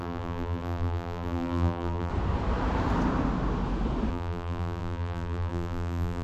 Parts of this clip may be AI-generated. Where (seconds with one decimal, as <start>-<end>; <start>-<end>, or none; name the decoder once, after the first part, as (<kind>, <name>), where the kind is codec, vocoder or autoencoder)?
0.0-2.1 (vocoder, BigVGAN v2); 4.1-6.2